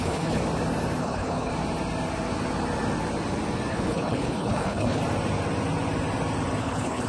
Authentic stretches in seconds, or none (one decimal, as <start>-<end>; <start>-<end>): 0.4-1.0; 1.5-3.7; 5.0-6.6